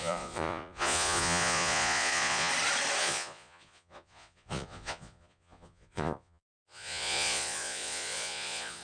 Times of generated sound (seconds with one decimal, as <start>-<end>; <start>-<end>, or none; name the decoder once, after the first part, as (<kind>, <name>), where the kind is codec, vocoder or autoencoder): 0.0-2.5 (vocoder, Vocos); 3.0-8.8